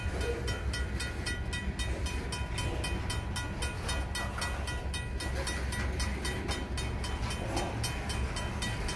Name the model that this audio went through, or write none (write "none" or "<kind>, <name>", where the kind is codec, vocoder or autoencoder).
none